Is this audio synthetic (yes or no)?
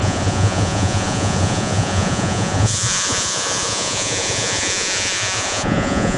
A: yes